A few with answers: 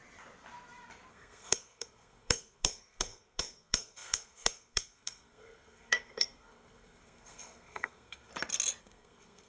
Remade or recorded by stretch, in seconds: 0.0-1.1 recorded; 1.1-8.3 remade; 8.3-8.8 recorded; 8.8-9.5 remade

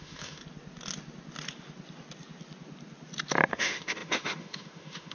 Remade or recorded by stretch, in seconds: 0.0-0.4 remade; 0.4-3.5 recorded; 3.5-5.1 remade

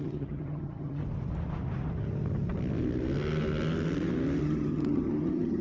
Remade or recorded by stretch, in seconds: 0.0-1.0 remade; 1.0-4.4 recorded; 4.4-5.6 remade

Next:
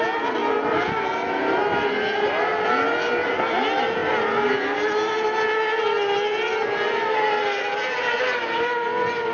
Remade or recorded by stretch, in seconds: 0.0-9.3 recorded